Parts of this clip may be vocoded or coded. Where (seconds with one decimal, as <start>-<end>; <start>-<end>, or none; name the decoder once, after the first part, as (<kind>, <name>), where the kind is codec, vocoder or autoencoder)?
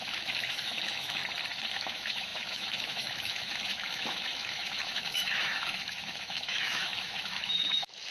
0.0-1.2 (autoencoder, DAC-VAE); 1.7-8.1